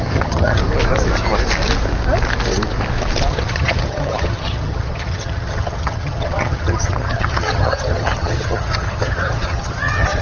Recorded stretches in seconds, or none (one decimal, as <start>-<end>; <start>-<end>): 0.6-3.3